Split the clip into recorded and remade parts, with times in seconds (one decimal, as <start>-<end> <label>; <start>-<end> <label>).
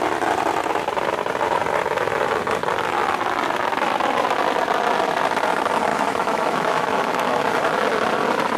0.0-5.9 recorded; 5.9-7.4 remade; 7.4-8.6 recorded